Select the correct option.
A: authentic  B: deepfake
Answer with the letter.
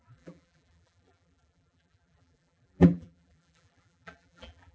B